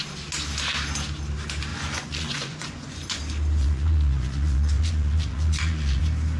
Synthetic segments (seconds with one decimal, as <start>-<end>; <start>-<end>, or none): 1.7-3.2; 3.6-6.0